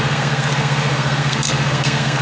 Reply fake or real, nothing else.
fake